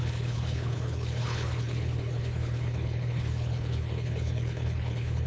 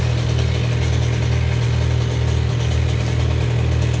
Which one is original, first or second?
second